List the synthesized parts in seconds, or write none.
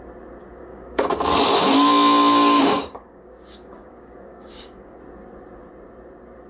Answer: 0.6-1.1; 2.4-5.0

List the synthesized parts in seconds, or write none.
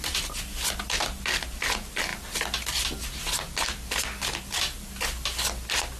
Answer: none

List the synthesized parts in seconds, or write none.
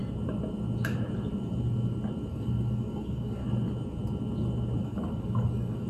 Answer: 2.3-3.4; 4.8-5.9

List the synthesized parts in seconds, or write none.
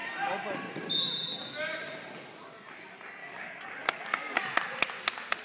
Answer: 3.2-4.4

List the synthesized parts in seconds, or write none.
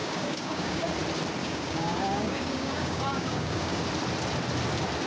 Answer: 0.0-0.9; 1.4-3.8